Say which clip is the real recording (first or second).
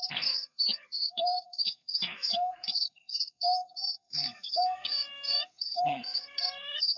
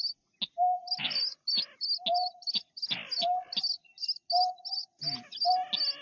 second